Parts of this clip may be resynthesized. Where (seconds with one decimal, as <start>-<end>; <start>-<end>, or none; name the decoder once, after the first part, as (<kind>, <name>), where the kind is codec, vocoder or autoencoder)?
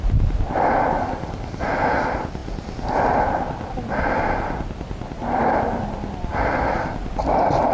0.9-1.6 (codec, DAC)